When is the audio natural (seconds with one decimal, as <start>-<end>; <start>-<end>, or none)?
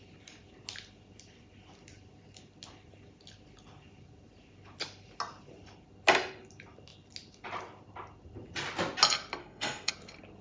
0.0-9.4; 9.9-10.4